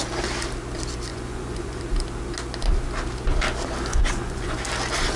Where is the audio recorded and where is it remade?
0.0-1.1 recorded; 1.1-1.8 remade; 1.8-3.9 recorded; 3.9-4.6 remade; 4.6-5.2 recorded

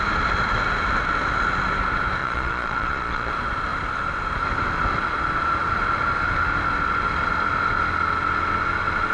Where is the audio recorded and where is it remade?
0.0-2.2 recorded; 2.2-3.3 remade; 3.3-9.1 recorded

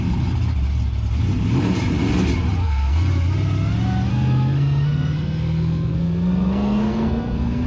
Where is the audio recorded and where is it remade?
0.0-2.6 recorded; 2.6-3.1 remade; 3.1-4.1 recorded; 4.1-7.7 remade